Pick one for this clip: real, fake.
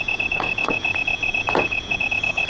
fake